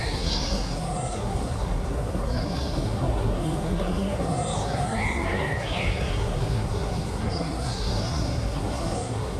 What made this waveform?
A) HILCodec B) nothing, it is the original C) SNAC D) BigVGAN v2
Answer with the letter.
C